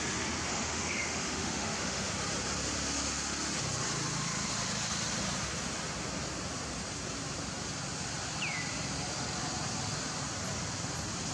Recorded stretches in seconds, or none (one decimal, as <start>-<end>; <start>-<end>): 0.0-0.5; 2.1-11.3